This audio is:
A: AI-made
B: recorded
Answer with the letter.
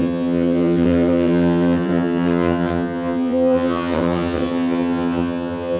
A